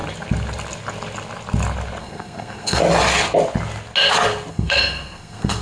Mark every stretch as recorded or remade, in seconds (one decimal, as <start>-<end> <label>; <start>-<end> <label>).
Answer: 0.0-2.0 recorded; 2.0-2.8 remade; 2.8-4.5 recorded; 4.5-5.6 remade